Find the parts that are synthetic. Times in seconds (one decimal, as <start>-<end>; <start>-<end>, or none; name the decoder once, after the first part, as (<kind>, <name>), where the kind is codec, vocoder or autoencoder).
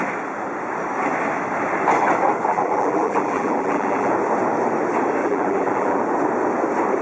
2.5-4.1 (vocoder, BigVGAN v2); 5.2-6.0